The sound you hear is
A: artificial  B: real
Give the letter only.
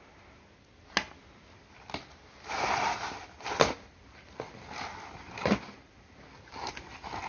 B